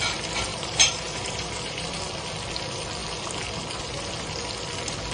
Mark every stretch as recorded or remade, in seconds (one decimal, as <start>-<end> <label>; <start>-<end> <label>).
0.0-0.5 recorded; 0.5-2.0 remade; 2.0-5.1 recorded